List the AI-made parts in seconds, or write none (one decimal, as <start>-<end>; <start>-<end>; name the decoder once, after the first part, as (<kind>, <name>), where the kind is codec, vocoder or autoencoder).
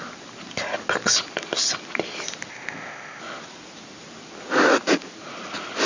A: 2.5-3.2 (codec, ZipCodec)